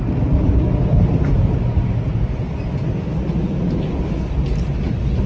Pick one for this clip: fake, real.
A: real